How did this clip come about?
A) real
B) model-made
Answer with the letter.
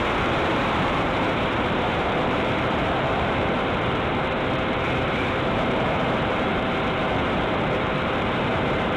B